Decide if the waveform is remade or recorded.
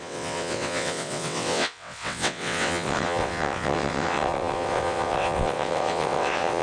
remade